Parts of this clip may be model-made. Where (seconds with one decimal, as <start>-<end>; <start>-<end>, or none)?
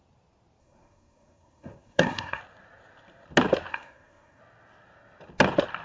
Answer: 0.6-2.4; 3.7-4.4